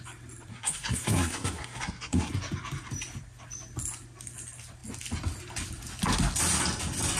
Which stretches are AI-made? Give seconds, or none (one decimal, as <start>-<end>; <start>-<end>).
0.5-2.3